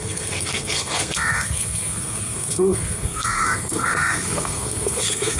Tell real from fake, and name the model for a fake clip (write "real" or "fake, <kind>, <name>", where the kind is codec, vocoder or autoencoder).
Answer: fake, codec, SNAC